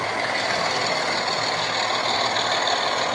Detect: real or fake real